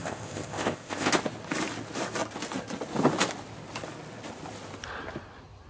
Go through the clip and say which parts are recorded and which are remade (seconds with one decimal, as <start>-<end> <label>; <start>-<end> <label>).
0.0-1.1 remade; 1.1-5.7 recorded